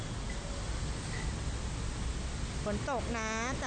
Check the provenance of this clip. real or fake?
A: real